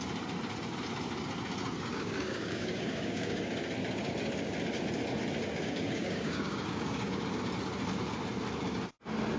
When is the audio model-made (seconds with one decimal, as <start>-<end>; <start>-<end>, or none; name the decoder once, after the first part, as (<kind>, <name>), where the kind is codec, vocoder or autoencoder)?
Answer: 1.9-3.5 (codec, DAC); 5.4-7.2